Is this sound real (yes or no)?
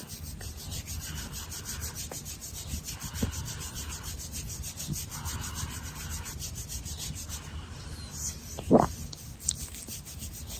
yes